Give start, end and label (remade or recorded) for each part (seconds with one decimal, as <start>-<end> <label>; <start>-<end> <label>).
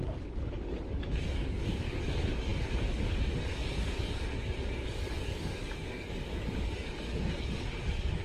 0.0-8.2 remade